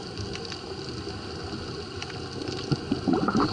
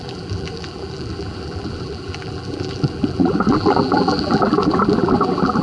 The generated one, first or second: second